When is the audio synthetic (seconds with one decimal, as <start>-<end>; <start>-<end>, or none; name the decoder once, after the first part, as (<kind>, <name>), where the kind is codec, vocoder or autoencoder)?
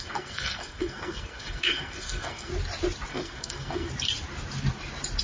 0.0-2.5 (codec, SNAC); 3.1-3.9